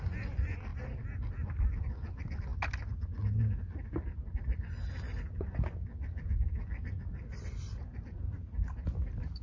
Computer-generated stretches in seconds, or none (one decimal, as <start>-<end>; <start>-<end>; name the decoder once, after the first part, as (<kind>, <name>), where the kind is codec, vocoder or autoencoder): none